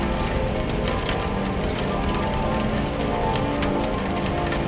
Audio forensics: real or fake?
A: real